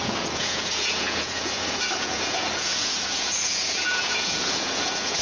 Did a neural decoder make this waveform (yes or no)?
yes